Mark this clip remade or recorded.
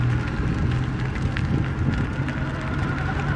recorded